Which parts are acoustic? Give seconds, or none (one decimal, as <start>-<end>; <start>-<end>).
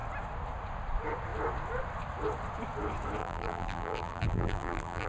0.0-3.2